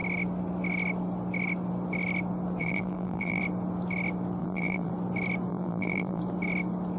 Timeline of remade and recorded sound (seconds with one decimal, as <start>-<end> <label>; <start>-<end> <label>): 0.0-2.6 recorded; 2.6-3.4 remade; 3.4-4.4 recorded; 4.4-4.9 remade; 4.9-5.5 recorded; 5.5-6.2 remade; 6.2-7.0 recorded